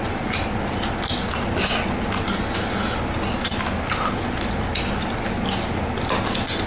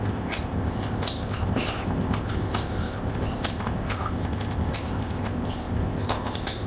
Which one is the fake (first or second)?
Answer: second